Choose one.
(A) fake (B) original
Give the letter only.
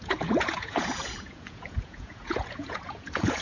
A